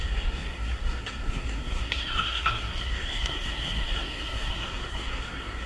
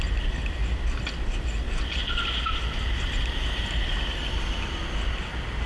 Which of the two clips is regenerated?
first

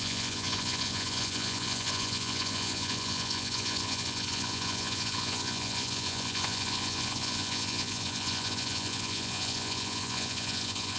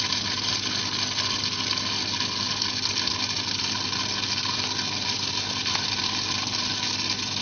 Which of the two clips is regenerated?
first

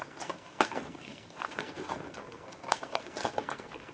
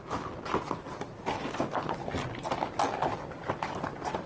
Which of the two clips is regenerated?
first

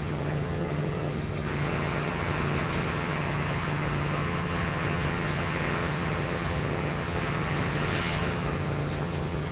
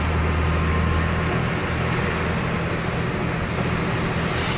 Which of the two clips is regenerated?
first